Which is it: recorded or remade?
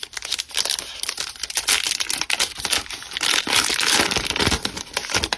recorded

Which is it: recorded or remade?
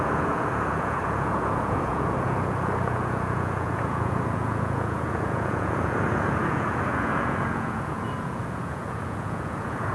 remade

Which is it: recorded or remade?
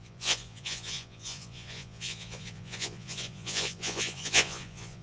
remade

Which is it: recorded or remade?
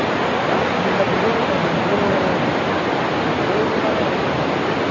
recorded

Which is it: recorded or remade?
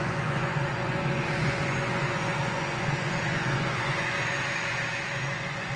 remade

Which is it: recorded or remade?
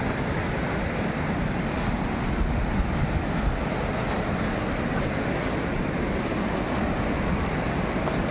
recorded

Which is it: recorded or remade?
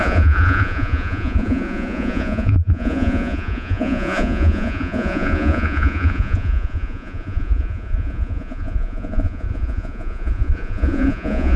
remade